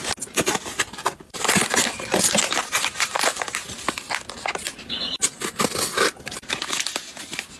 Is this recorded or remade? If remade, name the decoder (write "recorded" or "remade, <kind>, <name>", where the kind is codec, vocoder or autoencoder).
recorded